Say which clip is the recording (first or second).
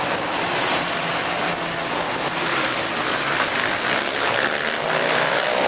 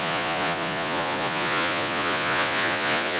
first